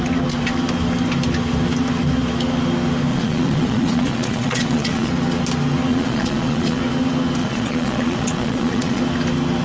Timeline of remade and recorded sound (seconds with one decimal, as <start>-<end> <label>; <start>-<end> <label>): 0.0-3.1 recorded; 3.1-5.1 remade; 5.1-5.9 recorded; 5.9-6.8 remade; 6.8-7.4 recorded; 7.4-9.0 remade; 9.0-9.6 recorded